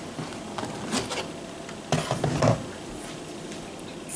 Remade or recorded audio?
recorded